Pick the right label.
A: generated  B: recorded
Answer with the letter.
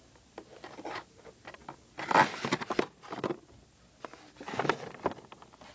B